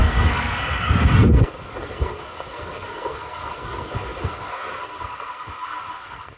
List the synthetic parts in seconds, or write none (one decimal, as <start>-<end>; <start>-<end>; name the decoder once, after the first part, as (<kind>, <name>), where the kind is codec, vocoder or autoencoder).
0.0-6.4 (codec, SNAC)